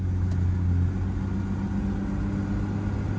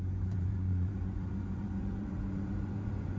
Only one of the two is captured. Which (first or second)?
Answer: first